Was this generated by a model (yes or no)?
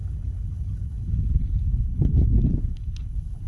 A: yes